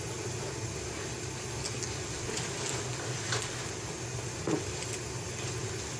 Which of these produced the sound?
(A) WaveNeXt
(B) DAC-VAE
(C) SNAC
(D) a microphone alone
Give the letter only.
D